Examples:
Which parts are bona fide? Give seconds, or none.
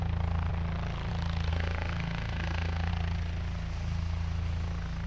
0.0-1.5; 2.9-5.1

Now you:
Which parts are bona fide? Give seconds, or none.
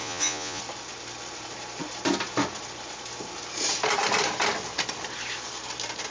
0.6-6.1